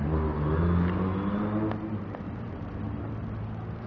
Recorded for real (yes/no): yes